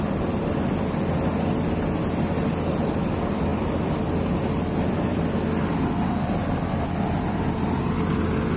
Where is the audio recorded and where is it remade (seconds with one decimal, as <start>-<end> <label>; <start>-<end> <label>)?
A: 0.0-8.6 recorded